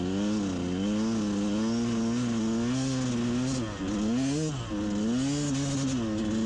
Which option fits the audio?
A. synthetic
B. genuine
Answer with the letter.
B